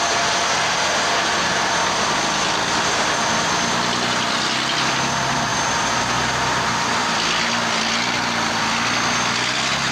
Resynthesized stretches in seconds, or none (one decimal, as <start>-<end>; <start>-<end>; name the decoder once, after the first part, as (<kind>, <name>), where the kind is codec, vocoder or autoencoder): none

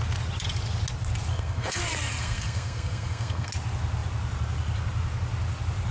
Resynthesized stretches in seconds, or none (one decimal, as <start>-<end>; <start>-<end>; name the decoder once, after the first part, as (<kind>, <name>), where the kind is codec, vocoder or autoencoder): 1.3-1.8 (codec, SNAC); 2.2-3.5

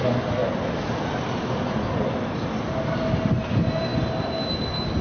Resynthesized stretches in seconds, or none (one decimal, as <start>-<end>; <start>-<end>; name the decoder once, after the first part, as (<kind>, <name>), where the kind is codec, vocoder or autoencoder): none

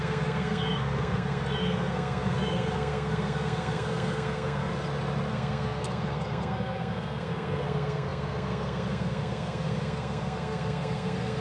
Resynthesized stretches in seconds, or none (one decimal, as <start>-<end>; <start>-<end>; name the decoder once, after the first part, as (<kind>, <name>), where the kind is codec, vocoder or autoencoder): 0.0-4.7 (codec, SNAC); 5.3-11.4

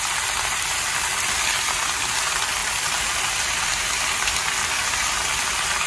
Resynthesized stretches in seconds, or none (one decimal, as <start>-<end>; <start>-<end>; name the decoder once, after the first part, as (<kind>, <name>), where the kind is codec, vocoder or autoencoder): 2.6-3.2 (vocoder, BigVGAN v2)

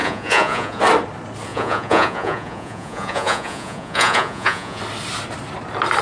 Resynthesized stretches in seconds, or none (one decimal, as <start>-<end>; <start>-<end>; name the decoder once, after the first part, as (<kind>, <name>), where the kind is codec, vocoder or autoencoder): 0.0-0.8 (vocoder, Vocos); 1.5-4.8

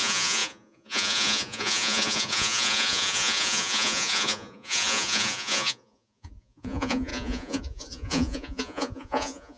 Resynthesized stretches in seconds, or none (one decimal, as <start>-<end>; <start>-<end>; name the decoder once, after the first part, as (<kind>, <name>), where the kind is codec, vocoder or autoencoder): 0.0-9.6 (vocoder, Vocos)

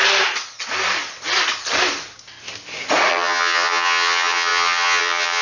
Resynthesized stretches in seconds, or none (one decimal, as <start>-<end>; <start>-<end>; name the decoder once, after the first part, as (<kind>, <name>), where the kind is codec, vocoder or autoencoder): 3.1-5.4 (vocoder, HiFi-GAN)